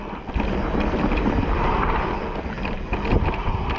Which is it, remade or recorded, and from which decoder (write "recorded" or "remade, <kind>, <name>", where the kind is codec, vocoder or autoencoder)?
recorded